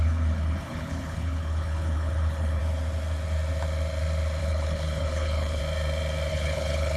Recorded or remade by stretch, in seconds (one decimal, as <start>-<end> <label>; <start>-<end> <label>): 0.0-2.6 remade; 2.6-4.4 recorded; 4.4-5.6 remade; 5.6-6.3 recorded; 6.3-7.0 remade